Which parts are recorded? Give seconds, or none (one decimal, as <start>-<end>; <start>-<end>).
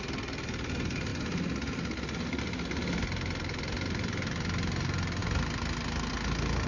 0.0-6.7